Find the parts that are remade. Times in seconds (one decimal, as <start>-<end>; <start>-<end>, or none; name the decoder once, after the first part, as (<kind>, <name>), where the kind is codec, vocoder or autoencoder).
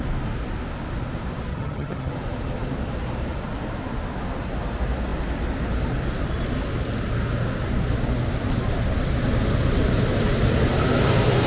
1.5-2.1 (vocoder, HiFi-GAN)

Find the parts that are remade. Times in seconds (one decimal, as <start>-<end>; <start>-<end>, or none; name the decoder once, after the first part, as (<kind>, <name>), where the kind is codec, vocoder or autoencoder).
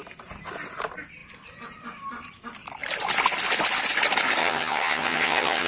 4.4-5.7 (vocoder, HiFi-GAN)